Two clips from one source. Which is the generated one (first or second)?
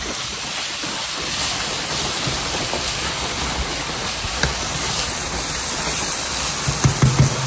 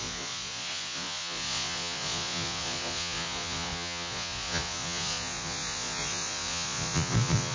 second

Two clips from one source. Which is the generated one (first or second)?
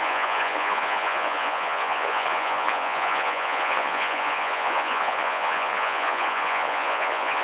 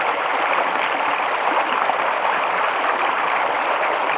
first